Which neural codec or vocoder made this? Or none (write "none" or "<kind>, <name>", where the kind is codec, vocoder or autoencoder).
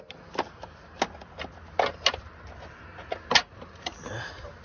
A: none